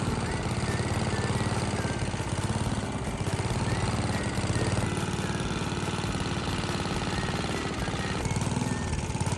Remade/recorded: recorded